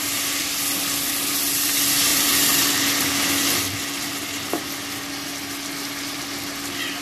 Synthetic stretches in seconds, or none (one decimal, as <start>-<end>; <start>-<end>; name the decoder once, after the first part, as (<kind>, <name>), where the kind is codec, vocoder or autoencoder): 2.1-2.7 (vocoder, BigVGAN v2)